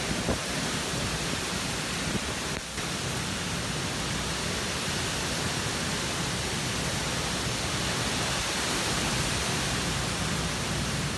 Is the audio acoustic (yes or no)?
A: yes